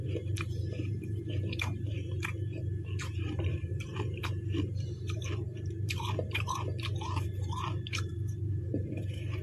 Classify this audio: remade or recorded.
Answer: remade